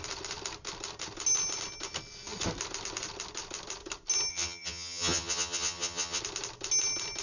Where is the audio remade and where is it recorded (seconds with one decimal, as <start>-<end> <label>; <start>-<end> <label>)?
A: 0.0-4.3 recorded; 4.3-6.2 remade; 6.2-7.2 recorded